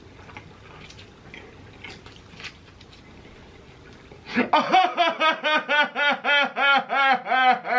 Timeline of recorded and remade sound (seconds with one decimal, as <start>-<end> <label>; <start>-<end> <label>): 0.0-7.8 recorded